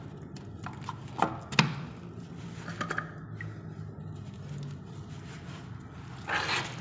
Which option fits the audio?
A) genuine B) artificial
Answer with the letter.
A